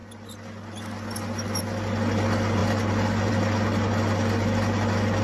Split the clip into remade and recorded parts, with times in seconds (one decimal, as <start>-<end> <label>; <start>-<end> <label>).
0.0-5.2 recorded